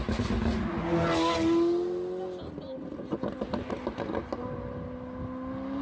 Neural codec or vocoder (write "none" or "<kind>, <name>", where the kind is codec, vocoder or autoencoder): none